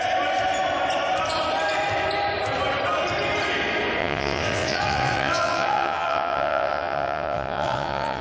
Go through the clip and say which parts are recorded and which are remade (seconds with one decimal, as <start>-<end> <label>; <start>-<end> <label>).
0.0-4.0 recorded; 4.0-8.2 remade